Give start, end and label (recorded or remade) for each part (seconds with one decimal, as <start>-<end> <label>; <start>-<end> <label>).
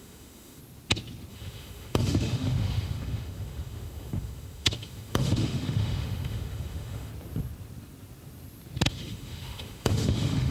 0.0-0.6 remade; 0.6-1.3 recorded; 1.3-7.1 remade; 7.1-8.9 recorded; 8.9-10.5 remade